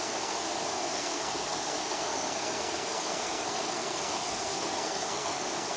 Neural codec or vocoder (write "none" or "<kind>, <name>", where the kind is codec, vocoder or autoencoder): codec, SNAC